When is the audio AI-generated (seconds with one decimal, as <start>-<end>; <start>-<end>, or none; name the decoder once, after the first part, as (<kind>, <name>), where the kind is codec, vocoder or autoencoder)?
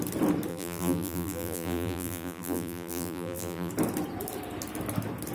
0.5-3.7 (vocoder, BigVGAN v2)